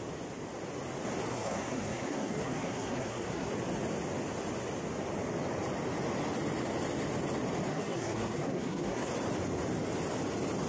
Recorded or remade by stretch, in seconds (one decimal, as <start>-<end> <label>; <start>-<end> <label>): 0.0-1.3 recorded; 1.3-3.5 remade; 3.5-7.7 recorded; 7.7-9.1 remade; 9.1-10.7 recorded

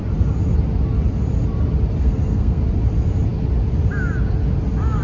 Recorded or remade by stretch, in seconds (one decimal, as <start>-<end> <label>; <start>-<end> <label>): 0.0-2.0 recorded; 2.0-2.6 remade; 2.6-5.0 recorded

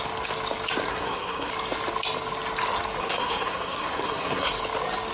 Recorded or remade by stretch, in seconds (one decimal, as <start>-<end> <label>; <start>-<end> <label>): 0.0-0.9 recorded; 0.9-1.5 remade; 1.5-3.0 recorded; 3.0-4.5 remade; 4.5-5.1 recorded

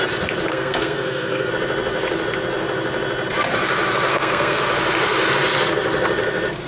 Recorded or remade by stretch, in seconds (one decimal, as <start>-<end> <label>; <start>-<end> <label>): 0.0-0.5 recorded; 0.5-1.5 remade; 1.5-4.1 recorded; 4.1-4.6 remade; 4.6-6.7 recorded

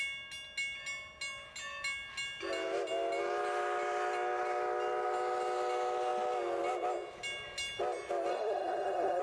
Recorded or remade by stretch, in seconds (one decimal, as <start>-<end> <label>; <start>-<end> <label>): 0.0-8.3 recorded; 8.3-9.2 remade

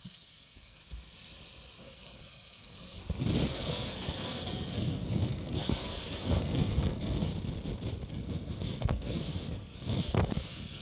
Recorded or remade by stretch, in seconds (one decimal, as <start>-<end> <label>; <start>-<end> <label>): 0.0-0.8 remade; 0.8-1.8 recorded; 1.8-3.0 remade; 3.0-3.5 recorded; 3.5-7.3 remade; 7.3-8.1 recorded; 8.1-10.8 remade